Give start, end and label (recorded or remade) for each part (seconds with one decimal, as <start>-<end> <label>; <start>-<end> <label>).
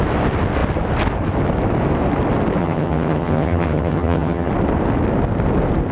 0.0-2.6 recorded; 2.6-4.5 remade; 4.5-5.9 recorded